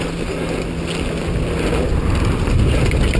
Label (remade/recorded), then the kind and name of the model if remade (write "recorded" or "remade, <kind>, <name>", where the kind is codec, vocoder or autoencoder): recorded